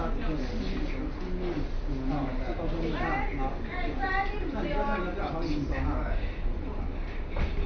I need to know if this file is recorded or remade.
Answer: recorded